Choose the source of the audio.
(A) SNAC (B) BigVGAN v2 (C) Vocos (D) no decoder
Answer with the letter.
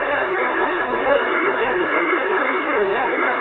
A